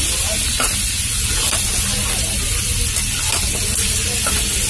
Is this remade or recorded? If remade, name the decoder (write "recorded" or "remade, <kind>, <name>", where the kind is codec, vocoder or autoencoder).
recorded